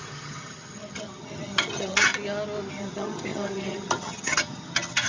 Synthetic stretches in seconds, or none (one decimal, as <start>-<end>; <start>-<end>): 0.0-2.1; 2.7-5.1